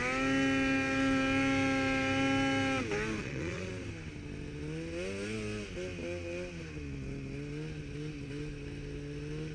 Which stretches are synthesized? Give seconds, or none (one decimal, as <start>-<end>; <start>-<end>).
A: 3.2-3.7